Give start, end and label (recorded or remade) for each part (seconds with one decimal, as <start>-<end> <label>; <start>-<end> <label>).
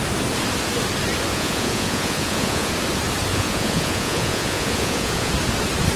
0.0-1.3 recorded; 1.3-2.7 remade; 2.7-3.3 recorded; 3.3-5.3 remade; 5.3-6.0 recorded